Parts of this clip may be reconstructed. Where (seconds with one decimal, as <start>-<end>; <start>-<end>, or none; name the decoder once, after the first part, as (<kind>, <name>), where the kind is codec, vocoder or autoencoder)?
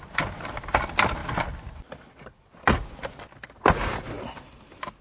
none